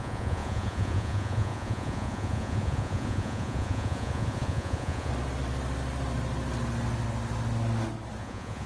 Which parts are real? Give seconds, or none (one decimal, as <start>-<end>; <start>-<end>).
5.1-8.2